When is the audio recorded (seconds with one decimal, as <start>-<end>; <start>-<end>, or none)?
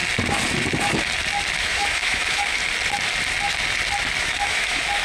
0.0-1.6; 2.6-4.2